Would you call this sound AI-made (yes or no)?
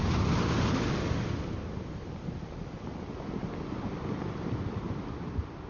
no